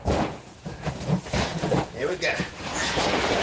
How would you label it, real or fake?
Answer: fake